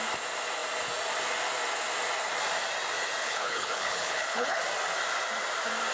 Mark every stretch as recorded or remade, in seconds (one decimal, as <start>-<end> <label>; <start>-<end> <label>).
0.0-3.2 recorded; 3.2-4.6 remade; 4.6-5.9 recorded